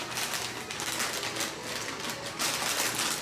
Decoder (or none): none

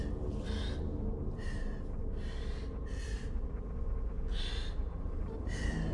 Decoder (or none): none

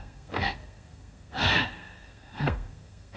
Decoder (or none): codec, SNAC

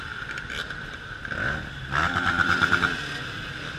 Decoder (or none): vocoder, BigVGAN v2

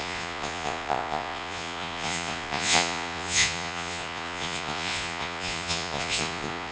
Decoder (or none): vocoder, Vocos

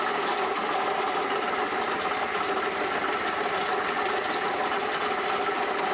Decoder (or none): none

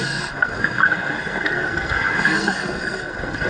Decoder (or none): codec, SNAC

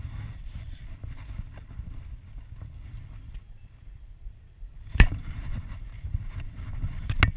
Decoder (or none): none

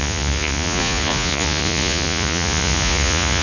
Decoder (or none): vocoder, Vocos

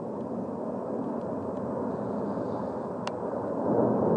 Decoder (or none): none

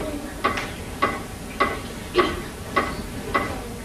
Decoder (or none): none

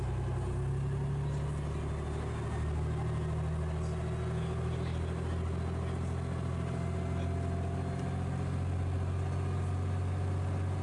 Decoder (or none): none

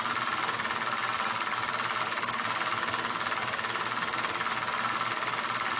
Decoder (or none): none